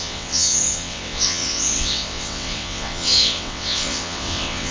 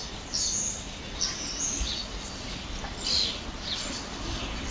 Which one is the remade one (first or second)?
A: first